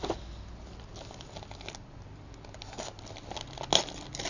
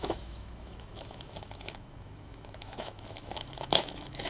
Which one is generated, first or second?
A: second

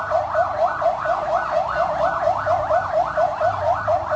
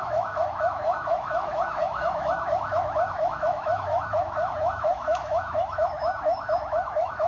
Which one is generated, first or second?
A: second